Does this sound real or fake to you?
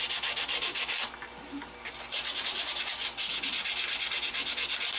real